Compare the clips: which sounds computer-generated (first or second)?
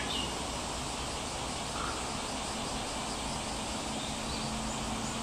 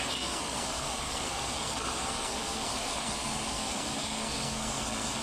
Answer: second